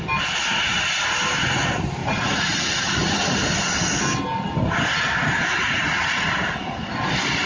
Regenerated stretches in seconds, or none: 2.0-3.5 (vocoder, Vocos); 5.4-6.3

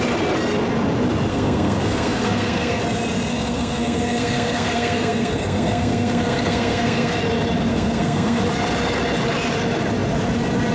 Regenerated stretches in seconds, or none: 1.3-2.8 (codec, SNAC); 3.3-7.2; 7.7-8.4

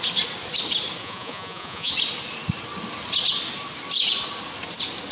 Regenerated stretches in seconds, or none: 1.0-1.9 (vocoder, Vocos)

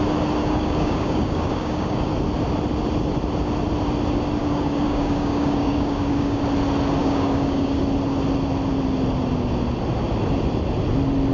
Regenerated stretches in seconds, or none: 0.4-2.1 (codec, DAC); 4.4-6.4; 7.0-7.8